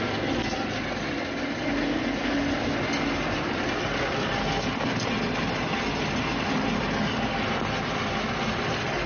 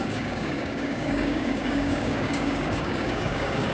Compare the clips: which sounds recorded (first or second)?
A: first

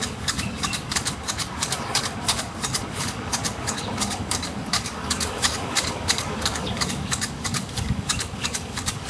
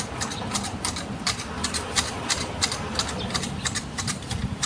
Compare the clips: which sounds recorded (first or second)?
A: second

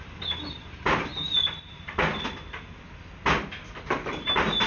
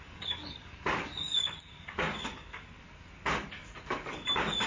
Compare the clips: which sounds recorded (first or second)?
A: first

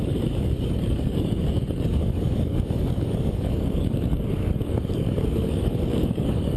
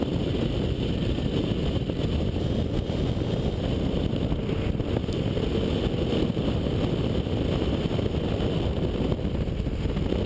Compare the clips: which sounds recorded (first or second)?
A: second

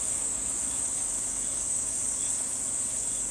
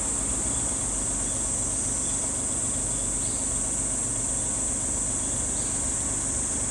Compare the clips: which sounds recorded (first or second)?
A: second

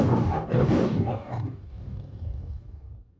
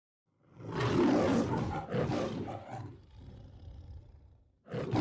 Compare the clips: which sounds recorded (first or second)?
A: second